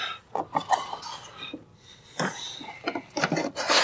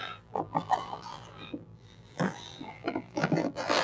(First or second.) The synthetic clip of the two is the second